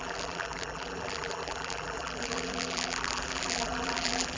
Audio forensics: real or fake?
fake